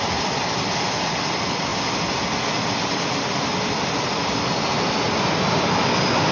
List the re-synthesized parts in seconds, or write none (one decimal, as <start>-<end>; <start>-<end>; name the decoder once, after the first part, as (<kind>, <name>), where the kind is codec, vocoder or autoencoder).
none